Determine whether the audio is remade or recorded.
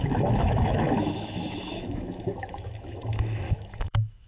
remade